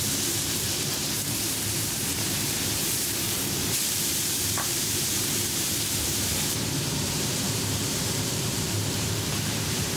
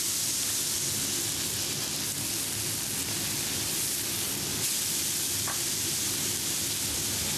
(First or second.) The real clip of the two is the second